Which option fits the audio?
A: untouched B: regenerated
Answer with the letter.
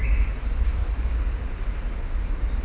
A